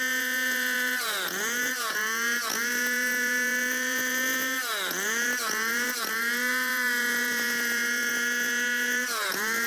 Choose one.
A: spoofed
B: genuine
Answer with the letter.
A